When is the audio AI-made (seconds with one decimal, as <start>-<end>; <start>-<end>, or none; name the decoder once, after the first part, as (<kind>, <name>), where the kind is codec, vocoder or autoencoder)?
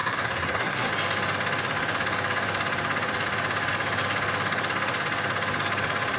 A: 0.0-0.9 (codec, SNAC)